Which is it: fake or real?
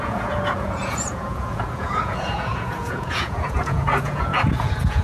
fake